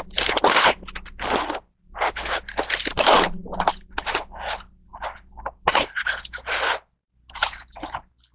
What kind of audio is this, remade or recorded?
recorded